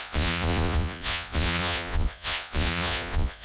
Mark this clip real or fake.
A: fake